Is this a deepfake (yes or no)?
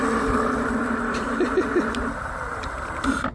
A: yes